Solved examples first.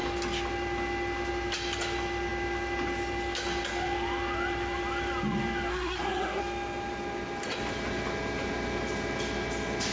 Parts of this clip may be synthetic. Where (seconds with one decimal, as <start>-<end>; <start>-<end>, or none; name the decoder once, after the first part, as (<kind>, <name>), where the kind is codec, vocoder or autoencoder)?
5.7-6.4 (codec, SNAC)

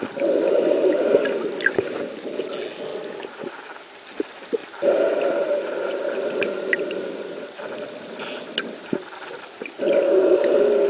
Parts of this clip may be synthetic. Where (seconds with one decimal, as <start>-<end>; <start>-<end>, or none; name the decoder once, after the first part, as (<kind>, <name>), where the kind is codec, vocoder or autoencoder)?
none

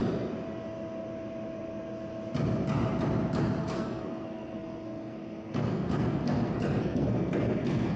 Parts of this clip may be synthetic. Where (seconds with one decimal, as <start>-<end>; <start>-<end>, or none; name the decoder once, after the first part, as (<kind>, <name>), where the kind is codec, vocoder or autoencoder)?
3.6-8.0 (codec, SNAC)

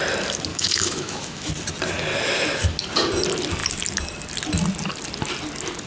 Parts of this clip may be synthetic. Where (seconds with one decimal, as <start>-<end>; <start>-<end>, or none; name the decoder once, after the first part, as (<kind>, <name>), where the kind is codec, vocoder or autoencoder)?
0.5-1.5 (autoencoder, DAC-VAE)

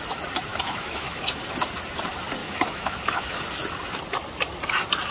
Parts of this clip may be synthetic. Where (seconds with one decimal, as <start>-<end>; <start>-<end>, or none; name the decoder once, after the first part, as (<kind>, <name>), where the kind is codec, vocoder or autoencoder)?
0.5-1.4 (autoencoder, DAC-VAE); 2.4-3.4

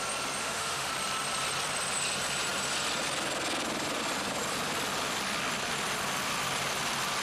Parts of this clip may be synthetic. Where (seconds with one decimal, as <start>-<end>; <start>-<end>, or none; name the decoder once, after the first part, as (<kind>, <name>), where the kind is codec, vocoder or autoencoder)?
0.4-0.9 (autoencoder, DAC-VAE)

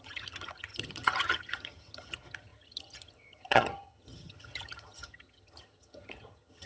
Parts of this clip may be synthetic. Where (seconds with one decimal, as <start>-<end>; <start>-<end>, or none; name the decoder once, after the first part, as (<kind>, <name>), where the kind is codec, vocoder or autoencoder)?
0.0-6.7 (vocoder, HiFi-GAN)